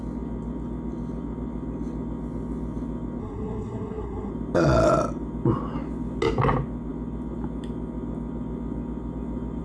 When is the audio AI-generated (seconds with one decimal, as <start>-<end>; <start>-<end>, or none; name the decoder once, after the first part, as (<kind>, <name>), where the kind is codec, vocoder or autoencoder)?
3.2-4.3 (codec, SNAC)